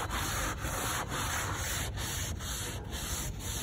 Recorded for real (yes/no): yes